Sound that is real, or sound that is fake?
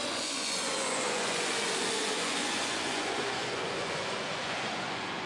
fake